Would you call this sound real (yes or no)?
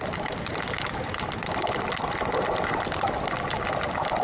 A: yes